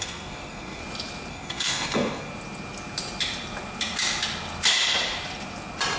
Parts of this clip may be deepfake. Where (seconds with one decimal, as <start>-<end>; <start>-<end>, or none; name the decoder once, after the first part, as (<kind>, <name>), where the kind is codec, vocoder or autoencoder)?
0.0-0.8 (codec, SNAC); 1.3-2.3